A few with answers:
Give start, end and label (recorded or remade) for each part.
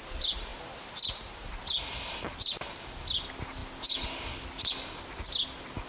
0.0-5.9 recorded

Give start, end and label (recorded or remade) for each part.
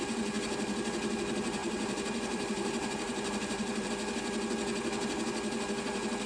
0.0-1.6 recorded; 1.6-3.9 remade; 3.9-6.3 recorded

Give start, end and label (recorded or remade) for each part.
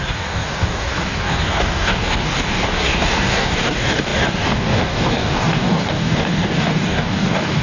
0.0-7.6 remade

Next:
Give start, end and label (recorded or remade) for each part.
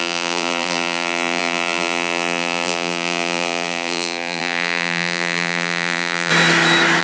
0.0-6.3 remade; 6.3-7.0 recorded